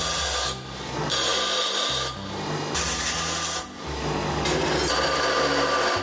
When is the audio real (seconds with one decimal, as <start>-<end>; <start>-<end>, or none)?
0.0-6.0